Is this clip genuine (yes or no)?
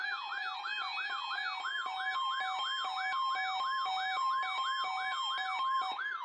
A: yes